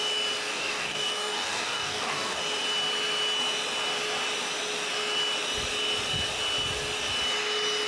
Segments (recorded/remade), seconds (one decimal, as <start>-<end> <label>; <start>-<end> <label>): 0.0-0.5 recorded; 0.5-2.4 remade; 2.4-7.9 recorded